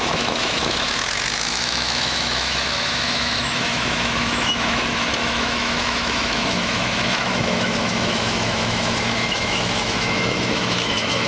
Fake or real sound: fake